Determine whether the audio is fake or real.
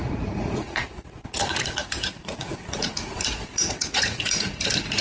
fake